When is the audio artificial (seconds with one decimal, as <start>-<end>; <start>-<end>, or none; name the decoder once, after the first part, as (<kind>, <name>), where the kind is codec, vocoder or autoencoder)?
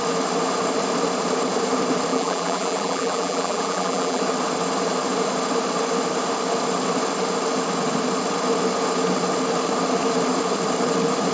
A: 2.1-4.2 (vocoder, BigVGAN v2)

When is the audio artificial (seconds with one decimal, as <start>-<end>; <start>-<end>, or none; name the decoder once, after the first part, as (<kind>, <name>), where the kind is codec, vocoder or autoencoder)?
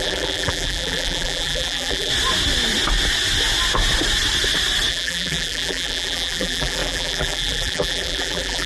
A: 0.0-2.1 (vocoder, BigVGAN v2); 4.9-8.7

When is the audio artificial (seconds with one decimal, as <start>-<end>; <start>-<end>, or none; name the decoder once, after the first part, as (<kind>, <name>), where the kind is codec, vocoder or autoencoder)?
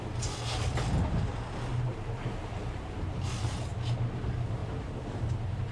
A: 1.7-3.7 (vocoder, BigVGAN v2)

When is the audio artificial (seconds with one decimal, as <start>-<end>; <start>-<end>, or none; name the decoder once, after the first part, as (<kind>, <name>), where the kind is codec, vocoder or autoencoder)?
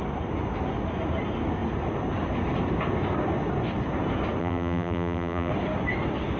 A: 4.4-5.5 (vocoder, BigVGAN v2)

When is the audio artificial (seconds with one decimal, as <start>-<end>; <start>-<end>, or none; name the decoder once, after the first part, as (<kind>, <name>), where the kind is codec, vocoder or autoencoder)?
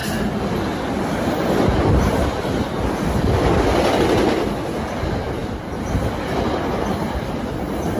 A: none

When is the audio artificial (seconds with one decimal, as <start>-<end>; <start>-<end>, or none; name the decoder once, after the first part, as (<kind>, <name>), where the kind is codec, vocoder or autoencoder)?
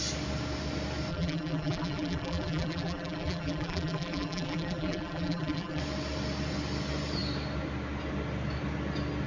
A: 1.1-5.8 (vocoder, BigVGAN v2)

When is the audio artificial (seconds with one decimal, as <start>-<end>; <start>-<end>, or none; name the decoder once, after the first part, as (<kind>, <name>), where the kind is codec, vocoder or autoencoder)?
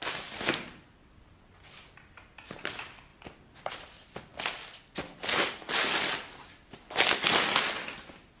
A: none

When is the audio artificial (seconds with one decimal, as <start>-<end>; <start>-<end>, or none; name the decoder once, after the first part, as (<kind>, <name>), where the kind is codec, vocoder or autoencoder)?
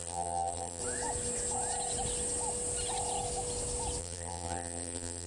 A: 0.0-0.8 (vocoder, BigVGAN v2); 4.0-5.3